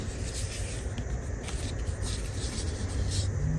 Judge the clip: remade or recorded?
recorded